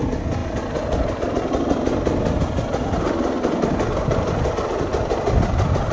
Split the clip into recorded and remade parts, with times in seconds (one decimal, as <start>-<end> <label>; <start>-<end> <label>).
0.0-5.9 recorded